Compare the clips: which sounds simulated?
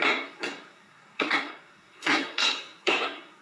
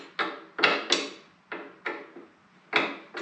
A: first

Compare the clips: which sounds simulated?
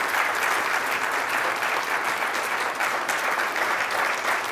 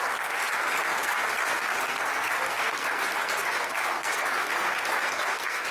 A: second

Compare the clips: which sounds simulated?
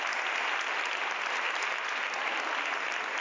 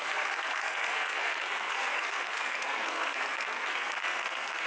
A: second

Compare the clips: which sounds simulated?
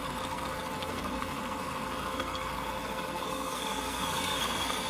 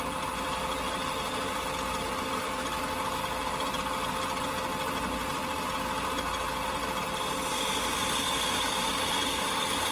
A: first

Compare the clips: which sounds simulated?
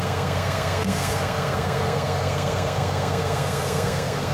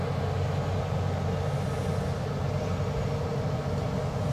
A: first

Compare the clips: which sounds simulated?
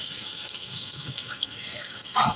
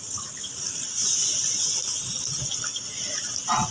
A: first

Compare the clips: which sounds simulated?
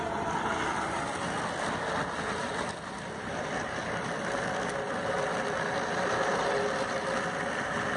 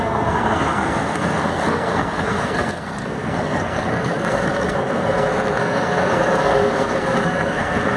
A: second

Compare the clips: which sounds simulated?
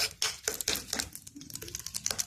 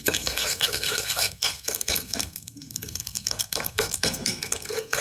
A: second